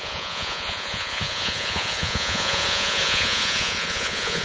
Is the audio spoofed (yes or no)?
yes